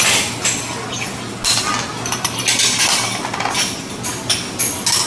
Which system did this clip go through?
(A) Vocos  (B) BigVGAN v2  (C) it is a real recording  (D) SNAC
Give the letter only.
C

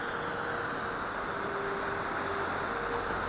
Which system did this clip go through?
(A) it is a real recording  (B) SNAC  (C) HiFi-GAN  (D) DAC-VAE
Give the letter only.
A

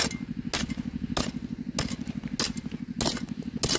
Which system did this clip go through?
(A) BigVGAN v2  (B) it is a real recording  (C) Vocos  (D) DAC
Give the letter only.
B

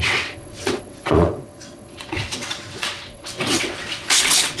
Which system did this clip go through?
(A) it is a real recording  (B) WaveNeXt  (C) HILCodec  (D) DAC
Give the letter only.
B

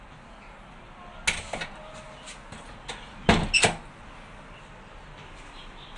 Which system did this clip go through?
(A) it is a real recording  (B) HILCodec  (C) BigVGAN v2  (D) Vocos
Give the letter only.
A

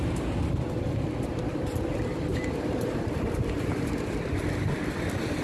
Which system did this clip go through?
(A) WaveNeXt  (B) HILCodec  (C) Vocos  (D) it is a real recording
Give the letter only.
D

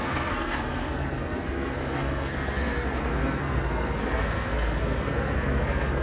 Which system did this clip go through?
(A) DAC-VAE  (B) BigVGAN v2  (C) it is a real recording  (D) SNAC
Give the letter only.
D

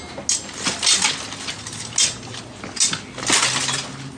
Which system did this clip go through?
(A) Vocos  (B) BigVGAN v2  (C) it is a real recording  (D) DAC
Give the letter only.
C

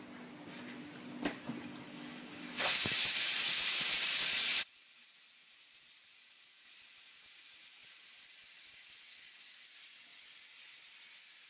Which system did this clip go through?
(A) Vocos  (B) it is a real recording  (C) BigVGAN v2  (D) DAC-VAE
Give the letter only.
B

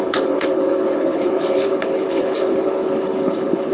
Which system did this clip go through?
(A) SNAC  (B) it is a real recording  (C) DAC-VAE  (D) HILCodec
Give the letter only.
D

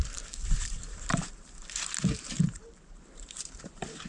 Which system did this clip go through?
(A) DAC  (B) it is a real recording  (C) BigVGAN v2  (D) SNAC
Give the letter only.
C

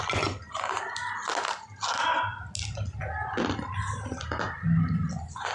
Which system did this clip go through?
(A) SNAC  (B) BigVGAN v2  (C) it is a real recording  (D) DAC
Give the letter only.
C